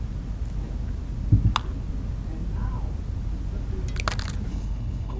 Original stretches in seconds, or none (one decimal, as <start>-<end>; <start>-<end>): 0.0-4.5